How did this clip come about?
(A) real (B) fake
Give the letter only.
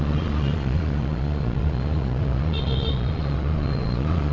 B